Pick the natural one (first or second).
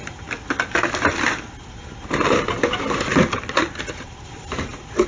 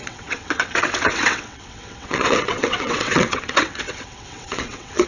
first